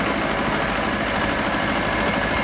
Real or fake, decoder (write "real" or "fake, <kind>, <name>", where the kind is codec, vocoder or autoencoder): real